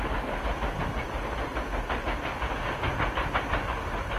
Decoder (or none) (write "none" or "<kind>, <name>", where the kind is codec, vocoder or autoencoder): none